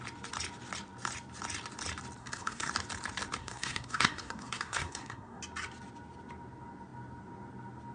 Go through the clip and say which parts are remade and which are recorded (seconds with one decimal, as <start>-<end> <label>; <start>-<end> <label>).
0.0-2.2 recorded; 2.2-2.7 remade; 2.7-3.4 recorded; 3.4-5.4 remade; 5.4-7.9 recorded